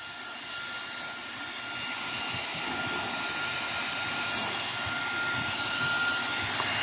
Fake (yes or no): no